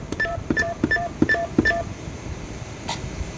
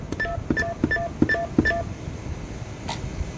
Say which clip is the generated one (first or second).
first